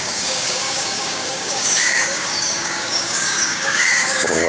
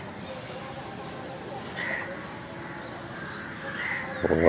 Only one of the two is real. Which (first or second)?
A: second